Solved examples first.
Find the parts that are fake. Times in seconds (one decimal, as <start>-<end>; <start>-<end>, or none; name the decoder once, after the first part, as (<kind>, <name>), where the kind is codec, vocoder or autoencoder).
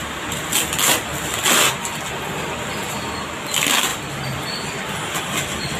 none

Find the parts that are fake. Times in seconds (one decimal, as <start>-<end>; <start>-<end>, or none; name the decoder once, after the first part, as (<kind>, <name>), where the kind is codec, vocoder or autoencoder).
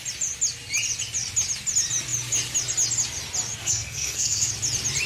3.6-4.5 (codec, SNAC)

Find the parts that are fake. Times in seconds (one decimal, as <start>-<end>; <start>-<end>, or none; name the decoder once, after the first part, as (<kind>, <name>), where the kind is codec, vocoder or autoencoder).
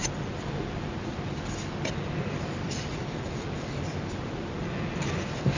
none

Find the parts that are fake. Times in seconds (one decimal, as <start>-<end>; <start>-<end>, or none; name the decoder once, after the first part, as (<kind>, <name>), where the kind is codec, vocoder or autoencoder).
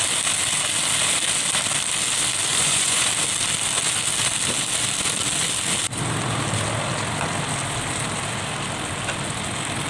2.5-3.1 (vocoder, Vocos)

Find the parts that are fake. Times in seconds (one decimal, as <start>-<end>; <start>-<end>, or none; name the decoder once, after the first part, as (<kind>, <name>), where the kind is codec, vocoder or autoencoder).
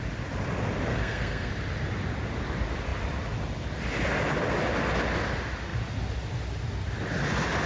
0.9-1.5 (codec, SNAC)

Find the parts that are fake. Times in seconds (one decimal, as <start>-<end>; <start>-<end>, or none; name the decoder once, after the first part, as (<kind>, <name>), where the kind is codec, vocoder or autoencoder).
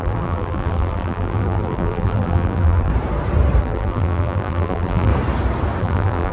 0.0-2.9 (vocoder, BigVGAN v2); 3.6-5.1; 5.8-6.3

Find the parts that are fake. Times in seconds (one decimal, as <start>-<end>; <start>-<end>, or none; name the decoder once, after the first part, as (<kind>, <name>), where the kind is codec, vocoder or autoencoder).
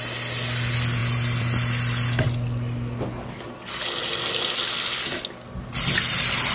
none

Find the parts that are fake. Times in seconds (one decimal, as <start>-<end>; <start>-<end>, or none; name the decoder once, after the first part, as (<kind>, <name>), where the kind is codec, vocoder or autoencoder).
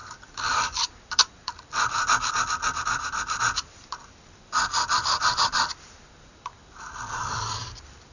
0.0-8.1 (vocoder, BigVGAN v2)